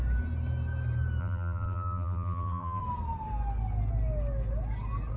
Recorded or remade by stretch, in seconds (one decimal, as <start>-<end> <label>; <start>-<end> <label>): 0.0-1.2 recorded; 1.2-2.8 remade; 2.8-5.2 recorded